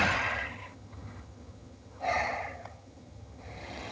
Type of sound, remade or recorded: remade